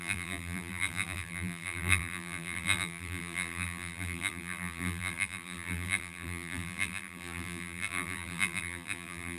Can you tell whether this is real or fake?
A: fake